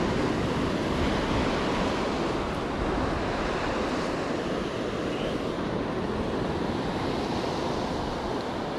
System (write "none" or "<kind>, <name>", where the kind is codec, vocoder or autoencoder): none